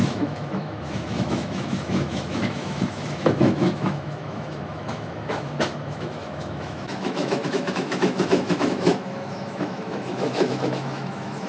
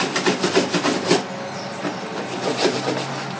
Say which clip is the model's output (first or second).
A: first